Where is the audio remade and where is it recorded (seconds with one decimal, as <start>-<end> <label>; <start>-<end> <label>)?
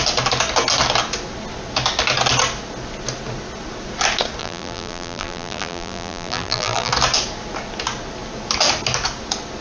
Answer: 0.0-4.4 recorded; 4.4-6.9 remade; 6.9-9.6 recorded